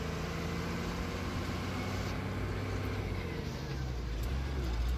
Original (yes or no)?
yes